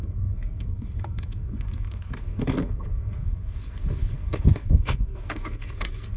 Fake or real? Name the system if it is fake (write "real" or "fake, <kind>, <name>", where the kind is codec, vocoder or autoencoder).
fake, codec, SNAC